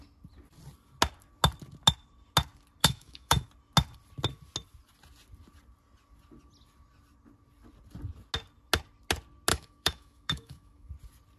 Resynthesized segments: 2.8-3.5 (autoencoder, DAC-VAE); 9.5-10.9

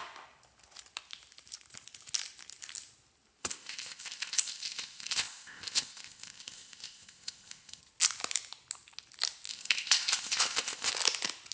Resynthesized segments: 3.4-7.8 (codec, ZipCodec); 9.5-10.9